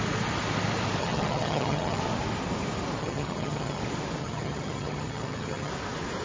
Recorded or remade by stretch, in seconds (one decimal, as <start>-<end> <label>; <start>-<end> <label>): 0.0-1.0 recorded; 1.0-2.0 remade; 2.0-3.0 recorded; 3.0-3.8 remade; 3.8-4.2 recorded; 4.2-5.7 remade; 5.7-6.2 recorded